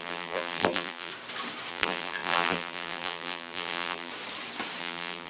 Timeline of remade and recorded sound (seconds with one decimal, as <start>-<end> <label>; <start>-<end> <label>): 0.0-1.1 remade; 1.1-1.7 recorded; 1.7-4.1 remade; 4.1-4.8 recorded; 4.8-5.3 remade